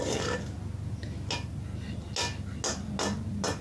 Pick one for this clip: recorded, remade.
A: recorded